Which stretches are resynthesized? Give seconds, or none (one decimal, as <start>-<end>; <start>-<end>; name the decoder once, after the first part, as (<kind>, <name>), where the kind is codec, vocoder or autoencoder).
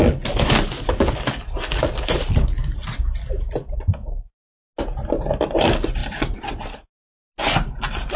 none